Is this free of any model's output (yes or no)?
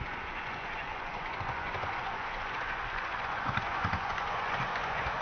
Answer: no